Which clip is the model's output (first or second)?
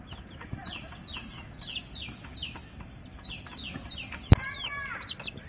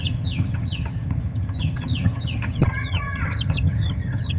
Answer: second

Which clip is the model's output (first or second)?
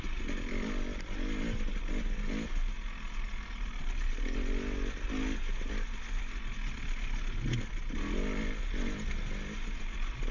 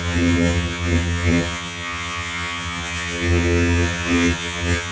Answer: second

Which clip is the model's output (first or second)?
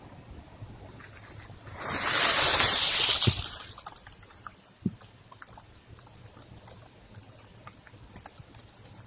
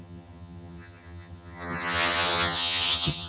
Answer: second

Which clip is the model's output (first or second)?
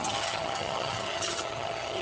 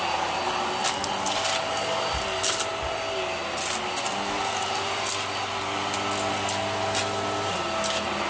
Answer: first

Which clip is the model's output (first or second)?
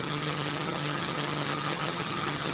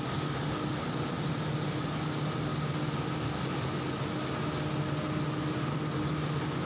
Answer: first